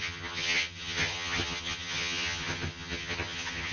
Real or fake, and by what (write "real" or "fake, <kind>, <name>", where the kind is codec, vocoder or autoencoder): fake, vocoder, HiFi-GAN